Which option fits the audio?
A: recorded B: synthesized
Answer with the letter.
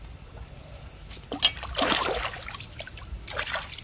A